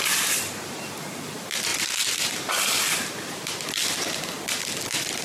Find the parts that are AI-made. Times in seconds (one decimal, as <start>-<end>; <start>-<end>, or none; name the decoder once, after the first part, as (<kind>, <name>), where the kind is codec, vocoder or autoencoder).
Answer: 1.7-2.5 (vocoder, BigVGAN v2)